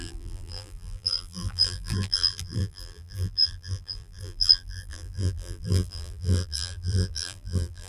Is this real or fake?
fake